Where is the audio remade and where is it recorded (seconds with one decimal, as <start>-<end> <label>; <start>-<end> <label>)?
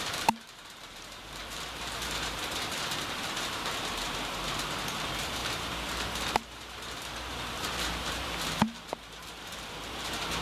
0.0-10.4 remade